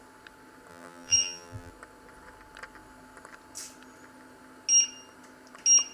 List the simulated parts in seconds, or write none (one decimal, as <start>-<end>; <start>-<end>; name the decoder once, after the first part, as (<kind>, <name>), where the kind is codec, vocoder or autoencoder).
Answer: 0.7-1.7 (vocoder, BigVGAN v2)